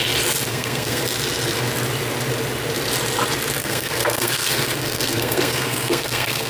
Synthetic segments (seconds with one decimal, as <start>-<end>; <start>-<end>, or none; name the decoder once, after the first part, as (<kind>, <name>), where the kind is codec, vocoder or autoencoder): 0.5-1.0 (codec, SNAC); 3.6-6.5